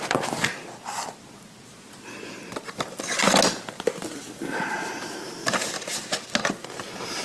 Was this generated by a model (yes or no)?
no